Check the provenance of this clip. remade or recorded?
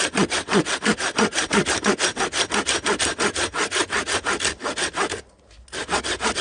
recorded